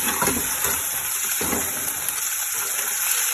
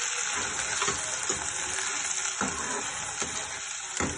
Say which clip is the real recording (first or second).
second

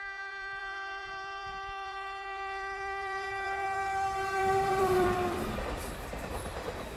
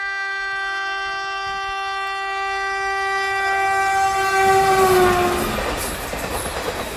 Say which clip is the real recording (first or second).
second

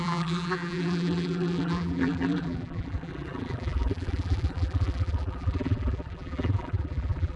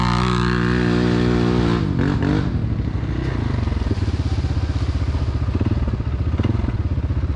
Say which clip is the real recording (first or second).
second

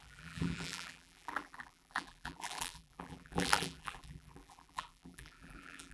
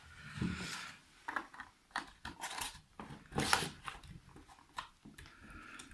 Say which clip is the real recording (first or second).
second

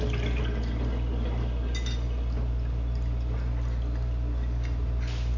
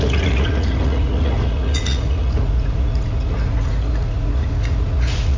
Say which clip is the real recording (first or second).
first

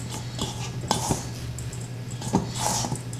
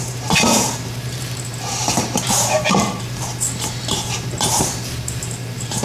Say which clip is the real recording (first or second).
first